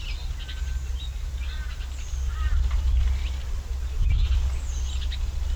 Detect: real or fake real